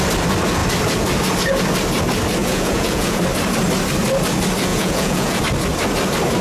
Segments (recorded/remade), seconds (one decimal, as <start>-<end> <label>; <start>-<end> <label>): 0.0-2.4 recorded; 2.4-3.2 remade; 3.2-4.7 recorded; 4.7-5.4 remade; 5.4-6.4 recorded